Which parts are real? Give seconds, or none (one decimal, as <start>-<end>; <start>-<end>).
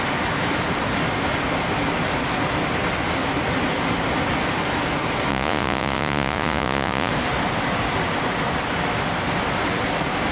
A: 0.0-5.3; 7.1-10.3